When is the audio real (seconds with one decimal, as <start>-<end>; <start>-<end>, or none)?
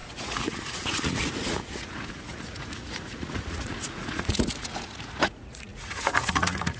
none